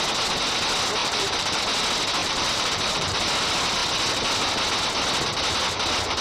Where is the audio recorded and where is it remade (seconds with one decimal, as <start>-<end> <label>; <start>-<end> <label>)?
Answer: 0.0-1.0 recorded; 1.0-1.6 remade; 1.6-2.2 recorded; 2.2-3.2 remade; 3.2-6.2 recorded